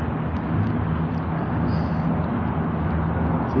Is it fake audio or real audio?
real